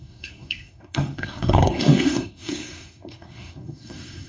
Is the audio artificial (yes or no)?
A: yes